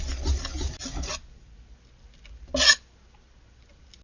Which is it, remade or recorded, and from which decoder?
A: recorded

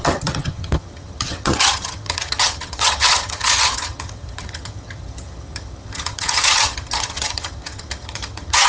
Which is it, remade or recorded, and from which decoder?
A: remade, vocoder, HiFi-GAN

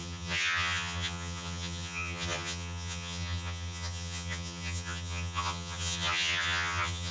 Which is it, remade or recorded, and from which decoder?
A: remade, vocoder, HiFi-GAN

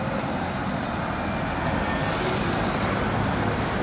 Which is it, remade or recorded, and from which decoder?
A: recorded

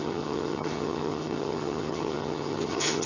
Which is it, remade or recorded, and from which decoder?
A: remade, vocoder, HiFi-GAN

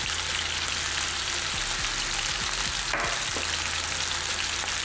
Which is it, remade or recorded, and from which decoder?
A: recorded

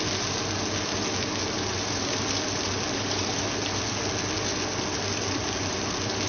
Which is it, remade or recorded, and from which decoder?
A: recorded